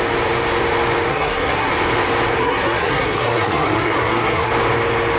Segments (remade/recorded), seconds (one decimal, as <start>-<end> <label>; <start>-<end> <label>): 0.0-1.1 recorded; 1.1-1.7 remade; 1.7-2.4 recorded; 2.4-4.5 remade; 4.5-5.2 recorded